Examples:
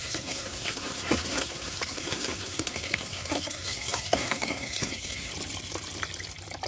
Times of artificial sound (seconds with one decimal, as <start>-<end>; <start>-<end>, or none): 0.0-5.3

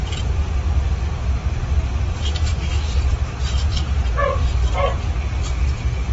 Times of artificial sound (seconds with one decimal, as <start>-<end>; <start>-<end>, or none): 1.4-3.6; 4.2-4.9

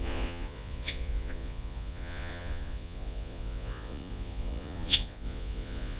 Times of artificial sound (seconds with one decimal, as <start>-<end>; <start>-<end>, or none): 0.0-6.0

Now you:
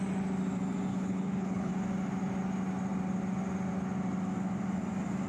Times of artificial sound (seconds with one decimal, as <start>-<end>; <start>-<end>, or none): 0.9-1.7

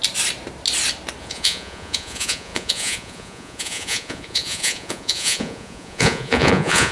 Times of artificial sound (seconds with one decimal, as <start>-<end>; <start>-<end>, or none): 1.2-6.9

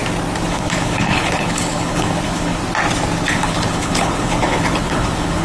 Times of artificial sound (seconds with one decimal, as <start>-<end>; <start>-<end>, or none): 0.5-2.6; 3.3-5.4

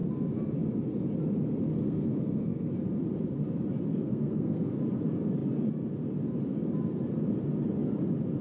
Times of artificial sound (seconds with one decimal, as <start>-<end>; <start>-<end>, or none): 1.7-2.7; 3.9-4.7